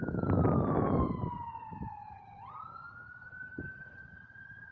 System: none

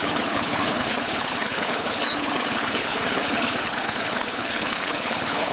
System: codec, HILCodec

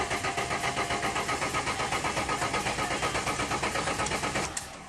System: none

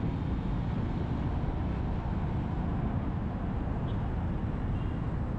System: none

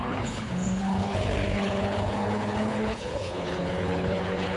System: codec, HILCodec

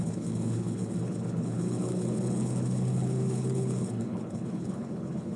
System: codec, HILCodec